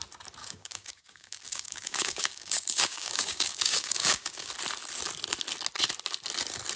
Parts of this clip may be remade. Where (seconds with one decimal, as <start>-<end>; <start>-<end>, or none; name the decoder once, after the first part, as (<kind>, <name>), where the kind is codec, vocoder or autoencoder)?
0.4-4.5 (codec, DAC)